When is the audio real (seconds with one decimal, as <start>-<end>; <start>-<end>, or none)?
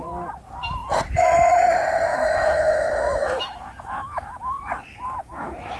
0.0-2.1; 4.6-5.2